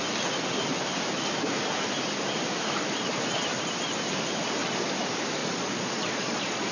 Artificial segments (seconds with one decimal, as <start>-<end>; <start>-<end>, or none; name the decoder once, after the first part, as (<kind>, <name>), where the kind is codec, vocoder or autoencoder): 5.4-6.7 (vocoder, Vocos)